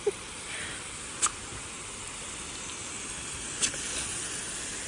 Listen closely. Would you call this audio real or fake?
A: fake